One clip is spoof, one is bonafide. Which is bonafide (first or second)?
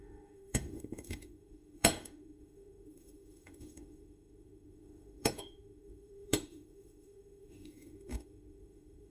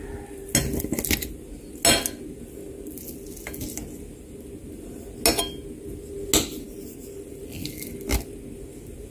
second